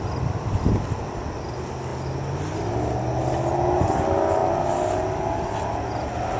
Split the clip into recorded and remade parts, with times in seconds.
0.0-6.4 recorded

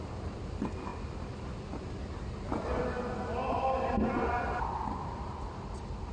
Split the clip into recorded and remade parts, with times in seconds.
0.0-6.1 recorded

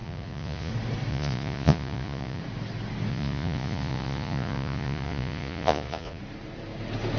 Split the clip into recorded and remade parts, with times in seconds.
0.0-0.7 remade; 0.7-1.1 recorded; 1.1-2.4 remade; 2.4-3.1 recorded; 3.1-6.2 remade; 6.2-7.2 recorded

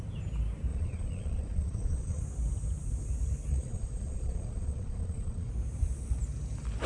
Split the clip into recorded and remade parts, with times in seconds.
0.0-0.7 recorded; 0.7-2.2 remade; 2.2-3.5 recorded; 3.5-5.5 remade; 5.5-6.9 recorded

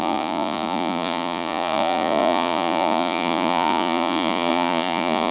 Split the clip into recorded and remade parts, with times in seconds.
0.0-5.3 remade